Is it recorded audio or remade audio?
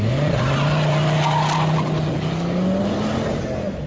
recorded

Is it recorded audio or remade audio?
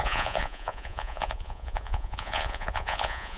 remade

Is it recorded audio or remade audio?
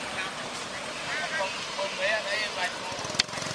recorded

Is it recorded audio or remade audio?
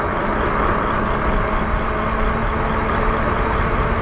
recorded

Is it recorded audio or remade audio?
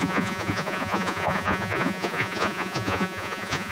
remade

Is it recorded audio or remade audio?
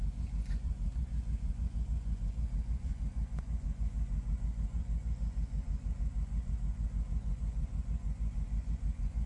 remade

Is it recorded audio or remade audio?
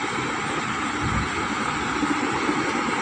recorded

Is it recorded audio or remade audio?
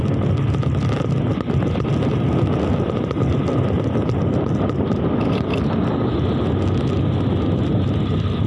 recorded